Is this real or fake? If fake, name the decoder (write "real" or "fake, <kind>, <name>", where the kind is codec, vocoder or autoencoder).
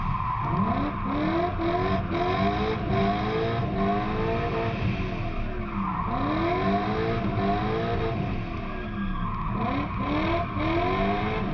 real